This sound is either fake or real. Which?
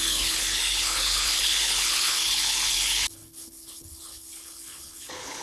fake